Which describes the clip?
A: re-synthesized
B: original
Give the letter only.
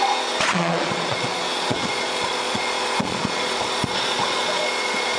A